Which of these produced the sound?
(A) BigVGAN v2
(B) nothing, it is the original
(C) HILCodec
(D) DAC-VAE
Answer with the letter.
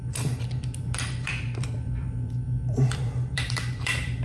A